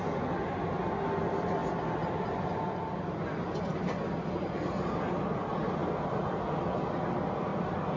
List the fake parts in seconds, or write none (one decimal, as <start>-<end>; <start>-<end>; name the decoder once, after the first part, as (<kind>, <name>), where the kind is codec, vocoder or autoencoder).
none